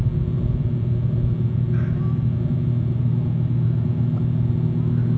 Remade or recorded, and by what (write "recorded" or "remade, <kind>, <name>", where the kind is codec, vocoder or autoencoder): recorded